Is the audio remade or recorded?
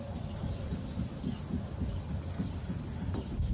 recorded